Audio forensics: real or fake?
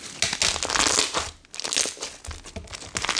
real